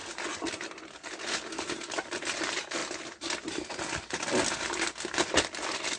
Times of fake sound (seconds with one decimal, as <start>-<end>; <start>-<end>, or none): none

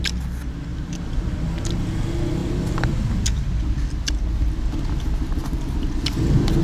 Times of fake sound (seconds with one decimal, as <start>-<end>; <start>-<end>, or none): 0.7-1.7; 2.4-3.4

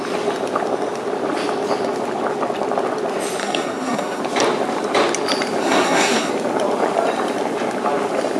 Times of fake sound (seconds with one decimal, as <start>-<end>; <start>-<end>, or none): 3.4-4.2; 5.6-6.3